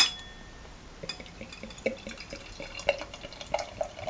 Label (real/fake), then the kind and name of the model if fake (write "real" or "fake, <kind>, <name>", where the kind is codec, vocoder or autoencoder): real